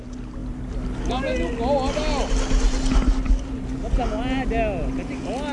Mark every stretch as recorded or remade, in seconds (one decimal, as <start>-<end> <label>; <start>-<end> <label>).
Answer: 0.0-5.5 recorded